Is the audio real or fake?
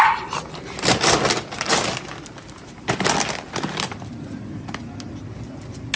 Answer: real